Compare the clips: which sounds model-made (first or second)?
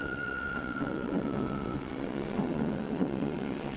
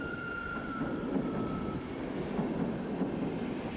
first